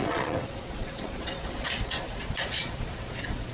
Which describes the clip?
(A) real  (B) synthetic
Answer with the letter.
B